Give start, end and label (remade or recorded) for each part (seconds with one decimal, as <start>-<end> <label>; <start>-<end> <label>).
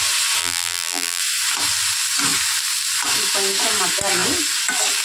0.0-0.4 recorded; 0.4-1.2 remade; 1.2-5.0 recorded